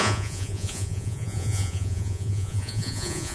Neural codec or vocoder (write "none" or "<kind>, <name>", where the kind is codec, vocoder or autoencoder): vocoder, Vocos